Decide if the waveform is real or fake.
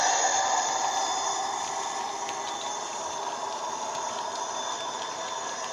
real